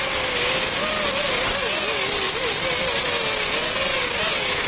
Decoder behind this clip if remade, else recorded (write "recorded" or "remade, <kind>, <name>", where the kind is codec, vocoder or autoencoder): recorded